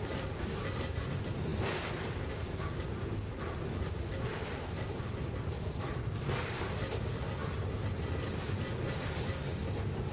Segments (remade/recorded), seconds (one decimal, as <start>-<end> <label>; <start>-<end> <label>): 0.0-10.1 recorded